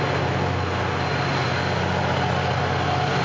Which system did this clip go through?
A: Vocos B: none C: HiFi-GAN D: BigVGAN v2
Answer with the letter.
B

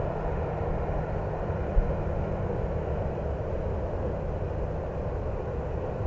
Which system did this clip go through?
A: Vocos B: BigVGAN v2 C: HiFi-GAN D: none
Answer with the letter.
D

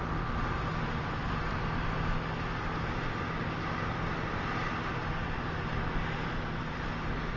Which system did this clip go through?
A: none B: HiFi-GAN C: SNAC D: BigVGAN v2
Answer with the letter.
A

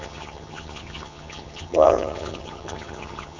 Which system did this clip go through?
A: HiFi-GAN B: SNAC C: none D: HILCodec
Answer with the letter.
A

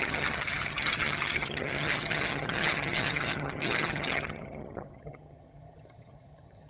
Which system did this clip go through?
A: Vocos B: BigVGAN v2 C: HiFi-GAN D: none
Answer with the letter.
C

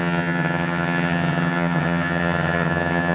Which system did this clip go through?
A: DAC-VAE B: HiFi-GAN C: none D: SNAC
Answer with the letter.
B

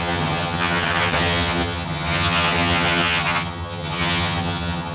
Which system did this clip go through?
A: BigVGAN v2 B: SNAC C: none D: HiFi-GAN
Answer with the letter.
D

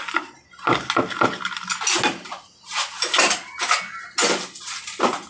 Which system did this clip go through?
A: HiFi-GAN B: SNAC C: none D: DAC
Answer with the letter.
C